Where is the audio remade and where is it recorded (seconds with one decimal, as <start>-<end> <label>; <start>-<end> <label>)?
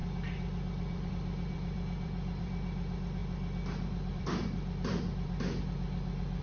0.0-3.2 remade; 3.2-4.1 recorded; 4.1-6.4 remade